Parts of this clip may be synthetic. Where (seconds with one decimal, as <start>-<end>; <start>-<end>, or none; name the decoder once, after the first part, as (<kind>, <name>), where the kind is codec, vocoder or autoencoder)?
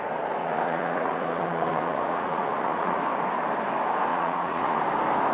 0.4-3.0 (vocoder, Vocos); 4.1-4.8